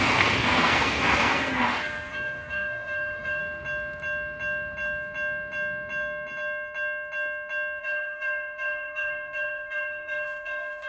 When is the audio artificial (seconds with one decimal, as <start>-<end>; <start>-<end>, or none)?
0.0-3.4; 7.8-10.9

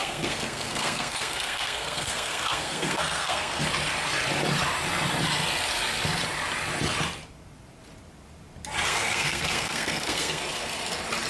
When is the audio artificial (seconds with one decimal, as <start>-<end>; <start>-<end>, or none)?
0.0-3.6; 8.9-10.4

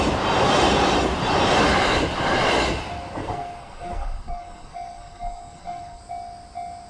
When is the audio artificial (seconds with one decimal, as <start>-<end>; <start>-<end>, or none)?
3.2-6.0